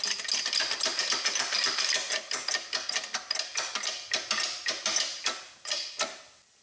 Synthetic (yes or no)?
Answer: no